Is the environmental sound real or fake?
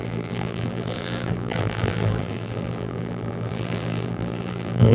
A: fake